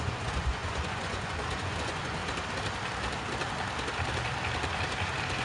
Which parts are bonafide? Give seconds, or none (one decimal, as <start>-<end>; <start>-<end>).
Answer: 2.2-5.4